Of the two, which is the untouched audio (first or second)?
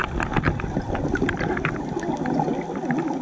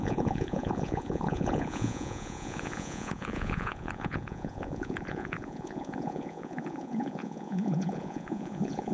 first